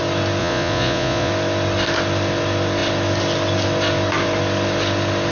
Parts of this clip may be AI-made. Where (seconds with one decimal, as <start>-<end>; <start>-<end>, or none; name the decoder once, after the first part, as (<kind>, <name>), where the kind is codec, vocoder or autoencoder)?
0.4-1.3 (vocoder, Vocos)